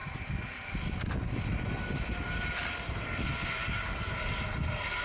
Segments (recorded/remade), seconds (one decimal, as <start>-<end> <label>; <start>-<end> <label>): 0.0-5.0 recorded